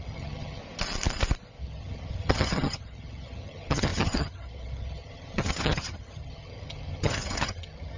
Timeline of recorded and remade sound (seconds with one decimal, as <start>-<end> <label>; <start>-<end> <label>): 0.0-0.6 remade; 0.6-1.6 recorded; 1.6-8.0 remade